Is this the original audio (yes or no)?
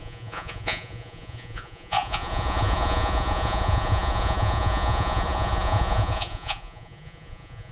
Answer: no